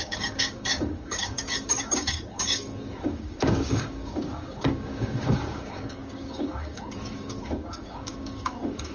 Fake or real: fake